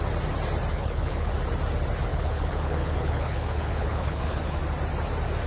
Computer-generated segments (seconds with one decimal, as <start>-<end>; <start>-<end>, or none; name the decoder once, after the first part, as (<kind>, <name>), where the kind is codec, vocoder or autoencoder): 0.7-1.3 (codec, HILCodec); 2.1-4.6